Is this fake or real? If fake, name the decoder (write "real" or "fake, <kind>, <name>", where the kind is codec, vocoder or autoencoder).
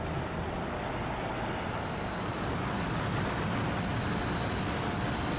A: real